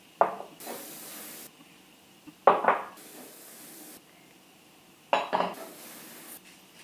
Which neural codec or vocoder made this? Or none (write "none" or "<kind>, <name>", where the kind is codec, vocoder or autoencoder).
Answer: none